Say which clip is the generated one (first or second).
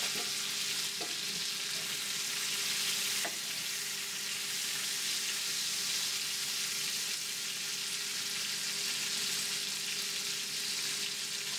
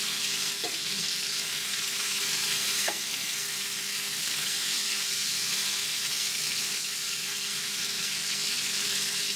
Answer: second